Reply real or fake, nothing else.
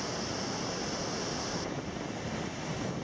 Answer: real